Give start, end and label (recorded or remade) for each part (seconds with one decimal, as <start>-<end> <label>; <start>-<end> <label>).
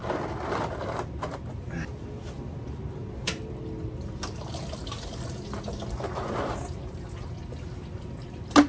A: 0.0-8.7 recorded